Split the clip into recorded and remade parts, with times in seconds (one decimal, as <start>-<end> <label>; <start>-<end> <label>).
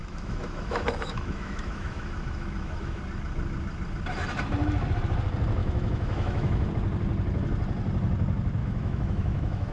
0.0-3.0 remade; 3.0-5.6 recorded; 5.6-6.7 remade; 6.7-8.6 recorded; 8.6-9.7 remade